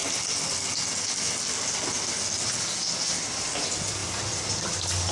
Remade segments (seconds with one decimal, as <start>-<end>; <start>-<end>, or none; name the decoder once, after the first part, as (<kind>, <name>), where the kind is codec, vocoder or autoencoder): none